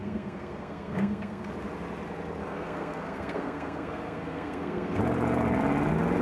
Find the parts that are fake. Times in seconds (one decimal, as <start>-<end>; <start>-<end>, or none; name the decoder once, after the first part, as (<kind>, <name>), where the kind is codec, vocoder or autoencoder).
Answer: 0.0-1.5 (codec, SNAC); 2.4-5.0